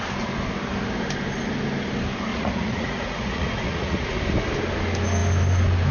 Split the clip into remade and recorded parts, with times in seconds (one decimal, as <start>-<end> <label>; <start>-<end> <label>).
0.0-2.3 recorded; 2.3-4.2 remade; 4.2-5.9 recorded